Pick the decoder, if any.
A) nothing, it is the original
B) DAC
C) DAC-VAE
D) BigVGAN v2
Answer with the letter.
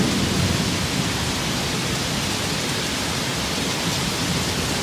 A